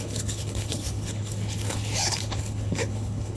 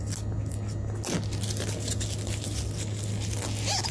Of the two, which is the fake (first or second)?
first